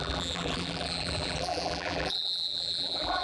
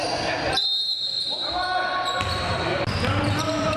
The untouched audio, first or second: second